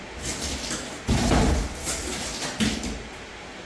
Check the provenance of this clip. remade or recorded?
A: recorded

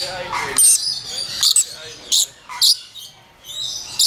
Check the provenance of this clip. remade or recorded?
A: recorded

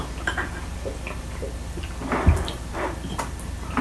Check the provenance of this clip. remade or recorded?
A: recorded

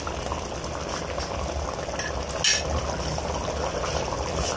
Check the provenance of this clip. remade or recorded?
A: recorded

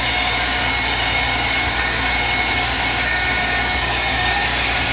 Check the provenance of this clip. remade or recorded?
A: remade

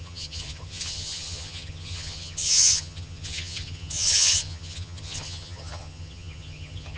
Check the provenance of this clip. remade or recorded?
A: remade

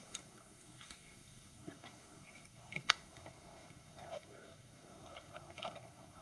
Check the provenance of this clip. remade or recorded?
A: remade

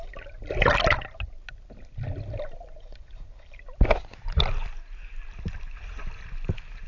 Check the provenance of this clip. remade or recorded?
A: recorded